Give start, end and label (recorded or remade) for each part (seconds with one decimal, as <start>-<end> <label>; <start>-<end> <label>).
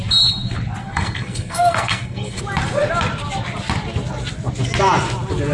0.0-0.8 recorded; 0.8-2.4 remade; 2.4-5.5 recorded